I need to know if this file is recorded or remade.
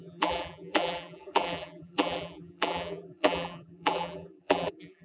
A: remade